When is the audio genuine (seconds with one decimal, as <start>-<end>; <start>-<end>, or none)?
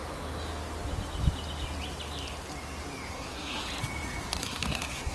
0.0-3.1; 3.6-4.4